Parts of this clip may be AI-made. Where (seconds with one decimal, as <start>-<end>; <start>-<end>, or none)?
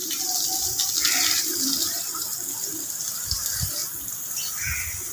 0.0-3.1; 3.8-4.5